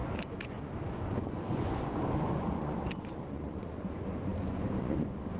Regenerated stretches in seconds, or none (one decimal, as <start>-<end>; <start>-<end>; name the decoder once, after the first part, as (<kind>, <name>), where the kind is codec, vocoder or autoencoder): 0.0-5.4 (vocoder, Vocos)